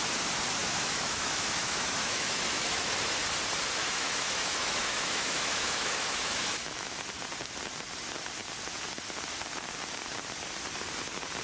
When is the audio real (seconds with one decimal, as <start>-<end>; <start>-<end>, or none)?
0.0-0.6; 2.9-3.8; 7.1-11.4